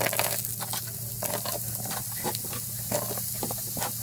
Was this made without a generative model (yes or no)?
yes